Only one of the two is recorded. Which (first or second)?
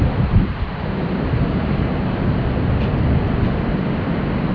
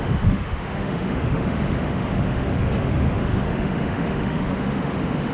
first